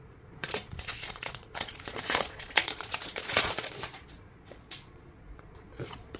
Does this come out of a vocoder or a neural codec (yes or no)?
yes